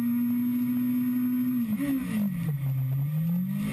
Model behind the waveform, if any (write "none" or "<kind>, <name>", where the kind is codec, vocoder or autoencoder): none